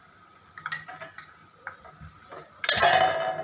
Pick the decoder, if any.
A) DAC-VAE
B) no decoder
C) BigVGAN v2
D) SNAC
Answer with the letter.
B